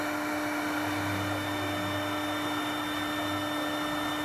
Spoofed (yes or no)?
no